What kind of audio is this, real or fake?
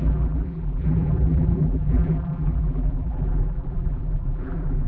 fake